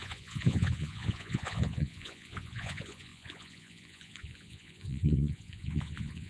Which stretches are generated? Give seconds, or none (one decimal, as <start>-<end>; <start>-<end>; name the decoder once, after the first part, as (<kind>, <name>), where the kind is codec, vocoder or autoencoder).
0.0-6.3 (vocoder, Vocos)